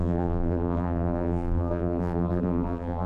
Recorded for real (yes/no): no